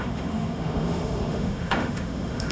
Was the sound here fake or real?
fake